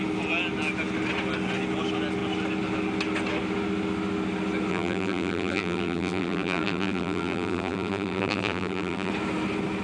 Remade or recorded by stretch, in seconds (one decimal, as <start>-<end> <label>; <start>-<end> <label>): 0.0-4.7 recorded; 4.7-9.1 remade; 9.1-9.8 recorded